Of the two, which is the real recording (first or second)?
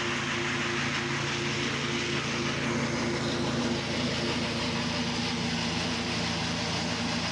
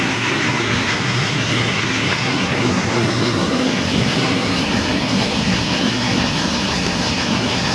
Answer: first